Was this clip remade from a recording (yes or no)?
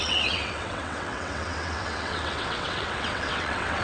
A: yes